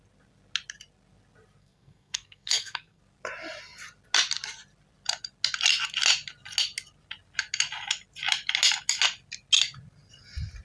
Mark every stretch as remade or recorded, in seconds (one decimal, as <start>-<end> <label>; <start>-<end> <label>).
0.0-1.6 recorded; 1.6-3.0 remade; 3.0-10.6 recorded